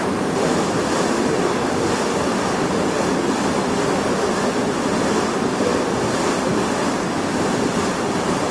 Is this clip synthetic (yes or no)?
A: no